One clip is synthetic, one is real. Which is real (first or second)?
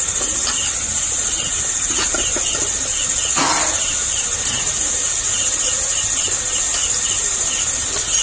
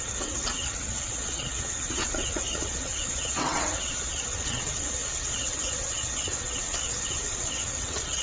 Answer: first